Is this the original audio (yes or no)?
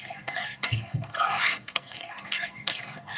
no